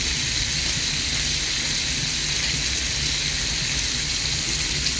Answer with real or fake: real